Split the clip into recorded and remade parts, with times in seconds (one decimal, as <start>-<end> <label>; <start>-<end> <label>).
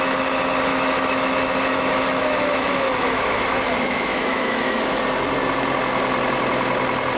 0.0-0.7 recorded; 0.7-5.0 remade; 5.0-7.2 recorded